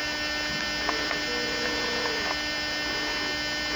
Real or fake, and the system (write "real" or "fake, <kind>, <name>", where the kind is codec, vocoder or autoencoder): real